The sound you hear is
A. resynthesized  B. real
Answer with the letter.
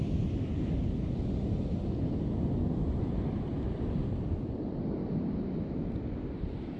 B